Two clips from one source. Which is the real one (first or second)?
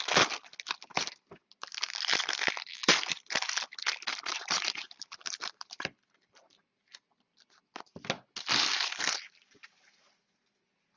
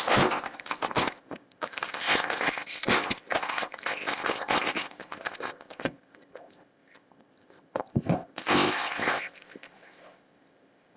first